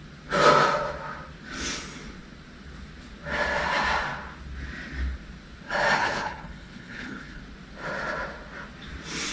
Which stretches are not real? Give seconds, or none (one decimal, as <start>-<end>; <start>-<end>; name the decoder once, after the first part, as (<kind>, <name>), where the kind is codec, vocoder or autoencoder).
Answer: 6.0-7.4 (codec, HILCodec)